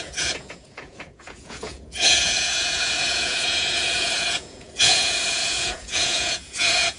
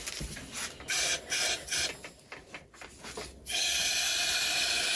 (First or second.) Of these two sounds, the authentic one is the second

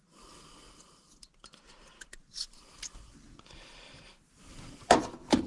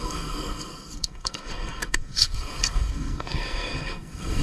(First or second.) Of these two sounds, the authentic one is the first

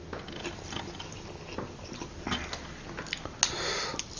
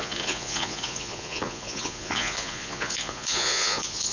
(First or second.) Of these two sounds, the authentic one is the first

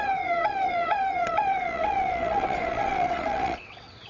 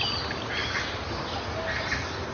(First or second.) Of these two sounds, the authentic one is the second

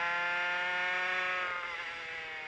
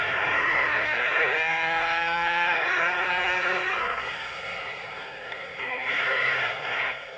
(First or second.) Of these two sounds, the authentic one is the first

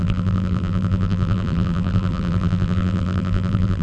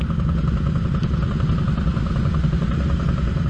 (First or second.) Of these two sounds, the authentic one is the second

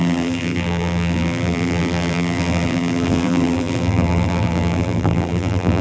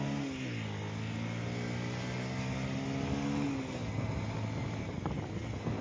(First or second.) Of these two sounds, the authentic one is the second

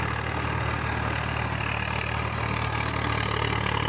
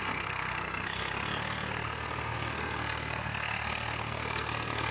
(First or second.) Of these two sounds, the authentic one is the first